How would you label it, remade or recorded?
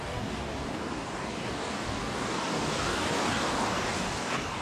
remade